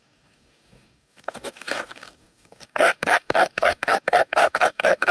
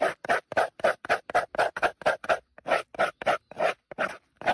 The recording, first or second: second